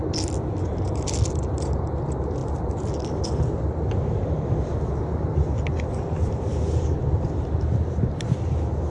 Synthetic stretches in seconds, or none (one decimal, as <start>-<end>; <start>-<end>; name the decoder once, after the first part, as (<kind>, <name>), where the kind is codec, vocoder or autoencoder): none